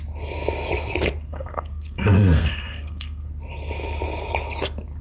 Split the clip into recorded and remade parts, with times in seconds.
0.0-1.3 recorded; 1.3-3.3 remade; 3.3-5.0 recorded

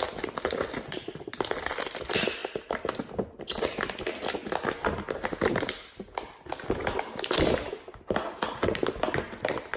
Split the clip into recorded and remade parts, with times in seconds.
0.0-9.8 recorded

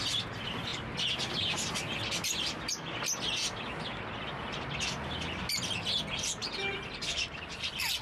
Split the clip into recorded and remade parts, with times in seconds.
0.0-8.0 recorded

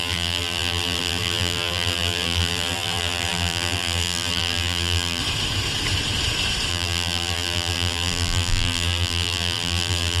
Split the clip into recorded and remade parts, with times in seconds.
0.0-5.2 remade; 5.2-6.7 recorded; 6.7-10.2 remade